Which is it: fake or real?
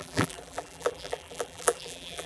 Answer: fake